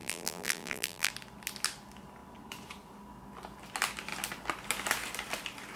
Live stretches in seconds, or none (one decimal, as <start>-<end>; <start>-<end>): 1.1-5.8